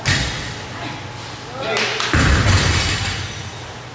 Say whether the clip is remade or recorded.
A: recorded